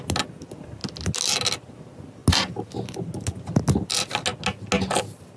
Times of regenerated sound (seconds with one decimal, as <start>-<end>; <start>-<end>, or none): none